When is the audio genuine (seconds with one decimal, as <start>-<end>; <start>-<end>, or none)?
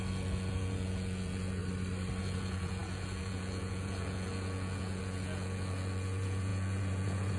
1.6-2.2